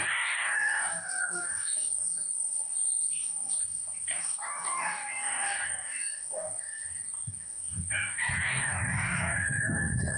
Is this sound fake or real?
fake